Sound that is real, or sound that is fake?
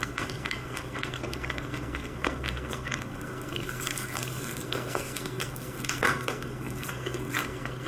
fake